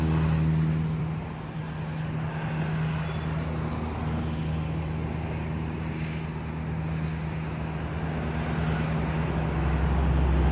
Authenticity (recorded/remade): recorded